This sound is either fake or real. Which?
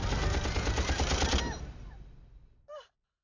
real